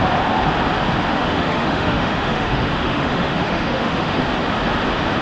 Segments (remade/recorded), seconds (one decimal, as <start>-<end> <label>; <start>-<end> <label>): 0.0-1.1 recorded; 1.1-4.2 remade; 4.2-5.2 recorded

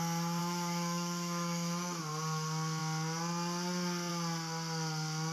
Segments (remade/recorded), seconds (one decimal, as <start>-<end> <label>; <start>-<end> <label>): 0.0-0.4 recorded; 0.4-2.0 remade; 2.0-5.3 recorded

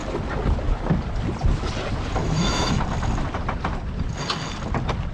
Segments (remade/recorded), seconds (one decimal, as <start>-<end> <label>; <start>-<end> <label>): 0.0-2.2 recorded; 2.2-2.8 remade; 2.8-5.1 recorded

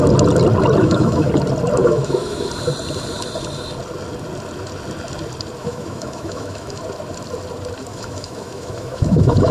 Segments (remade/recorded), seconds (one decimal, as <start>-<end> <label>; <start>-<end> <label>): 0.0-0.8 recorded; 0.8-1.3 remade; 1.3-1.8 recorded; 1.8-2.5 remade; 2.5-5.6 recorded; 5.6-6.8 remade; 6.8-7.9 recorded; 7.9-9.5 remade

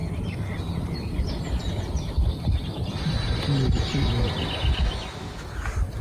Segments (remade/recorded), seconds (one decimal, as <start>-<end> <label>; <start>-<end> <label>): 0.0-4.8 recorded; 4.8-5.5 remade; 5.5-6.0 recorded